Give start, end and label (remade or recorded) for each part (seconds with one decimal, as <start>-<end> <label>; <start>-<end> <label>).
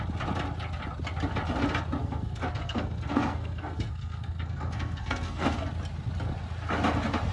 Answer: 0.0-2.0 recorded; 2.0-5.7 remade; 5.7-7.3 recorded